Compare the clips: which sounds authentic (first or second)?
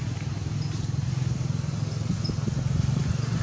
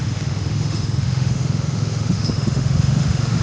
first